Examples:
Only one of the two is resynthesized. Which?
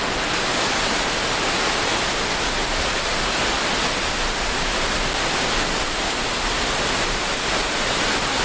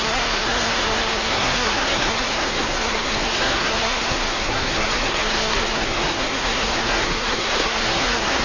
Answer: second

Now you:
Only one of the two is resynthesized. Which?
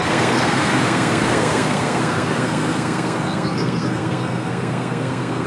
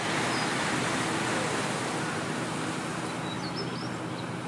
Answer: first